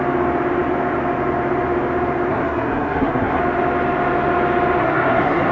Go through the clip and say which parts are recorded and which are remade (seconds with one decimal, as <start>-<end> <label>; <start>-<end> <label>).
0.0-2.3 recorded; 2.3-3.4 remade; 3.4-4.8 recorded; 4.8-5.5 remade